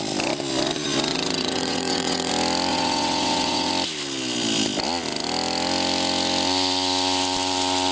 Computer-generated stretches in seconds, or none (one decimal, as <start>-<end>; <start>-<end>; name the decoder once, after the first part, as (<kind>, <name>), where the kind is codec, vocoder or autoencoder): 1.1-2.3 (vocoder, WaveNeXt); 2.7-3.7

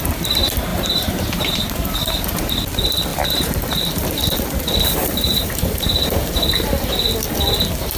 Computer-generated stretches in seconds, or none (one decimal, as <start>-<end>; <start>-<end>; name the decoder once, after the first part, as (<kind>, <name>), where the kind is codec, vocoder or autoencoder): 0.7-2.5 (vocoder, BigVGAN v2); 3.1-7.1